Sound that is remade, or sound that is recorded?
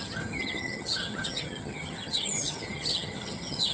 remade